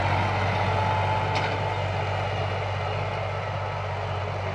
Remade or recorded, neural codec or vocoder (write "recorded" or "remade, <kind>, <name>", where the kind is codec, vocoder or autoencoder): recorded